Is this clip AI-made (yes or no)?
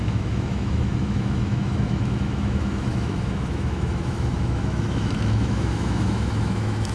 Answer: yes